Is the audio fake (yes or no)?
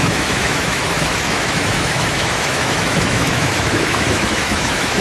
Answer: yes